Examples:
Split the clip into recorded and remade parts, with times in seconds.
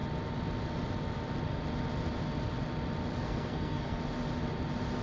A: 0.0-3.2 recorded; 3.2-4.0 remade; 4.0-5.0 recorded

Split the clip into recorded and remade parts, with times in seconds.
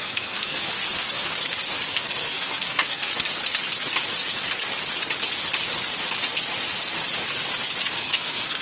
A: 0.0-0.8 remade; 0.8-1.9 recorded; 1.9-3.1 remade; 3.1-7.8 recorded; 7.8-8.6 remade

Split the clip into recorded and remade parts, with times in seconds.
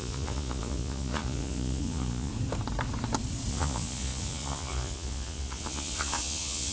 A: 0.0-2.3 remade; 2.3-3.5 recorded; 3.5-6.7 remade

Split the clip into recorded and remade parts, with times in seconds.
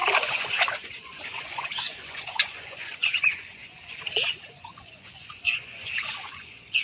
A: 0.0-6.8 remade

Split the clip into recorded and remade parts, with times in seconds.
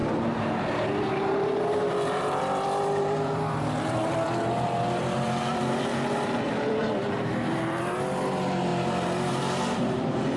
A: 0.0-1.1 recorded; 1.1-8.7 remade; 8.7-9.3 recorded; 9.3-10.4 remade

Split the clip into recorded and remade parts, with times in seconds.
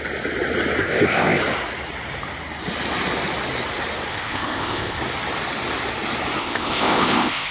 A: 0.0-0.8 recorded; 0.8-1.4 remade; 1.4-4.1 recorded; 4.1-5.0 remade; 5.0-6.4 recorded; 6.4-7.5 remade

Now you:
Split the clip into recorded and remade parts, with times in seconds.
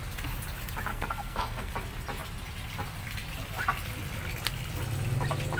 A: 0.0-0.9 recorded; 0.9-1.7 remade; 1.7-5.6 recorded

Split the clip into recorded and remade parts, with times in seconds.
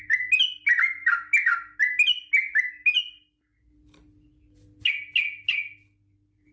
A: 0.0-6.5 recorded